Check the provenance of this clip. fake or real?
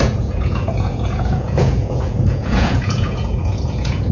fake